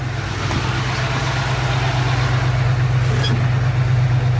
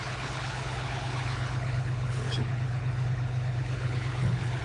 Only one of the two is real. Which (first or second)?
first